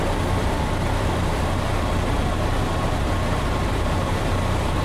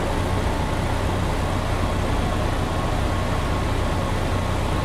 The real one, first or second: second